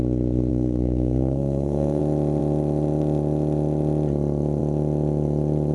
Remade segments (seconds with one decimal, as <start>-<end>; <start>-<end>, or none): 0.5-2.0